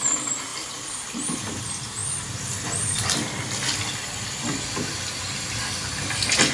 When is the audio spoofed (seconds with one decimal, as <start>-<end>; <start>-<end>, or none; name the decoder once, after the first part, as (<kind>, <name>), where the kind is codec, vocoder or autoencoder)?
0.5-1.6 (vocoder, BigVGAN v2)